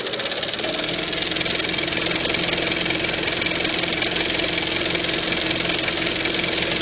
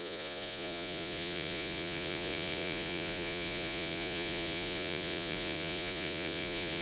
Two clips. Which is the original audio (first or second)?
first